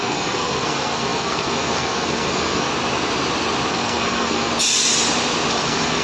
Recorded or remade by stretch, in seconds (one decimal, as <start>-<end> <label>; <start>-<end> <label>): 0.0-2.7 remade; 2.7-3.7 recorded; 3.7-4.5 remade; 4.5-5.5 recorded; 5.5-6.0 remade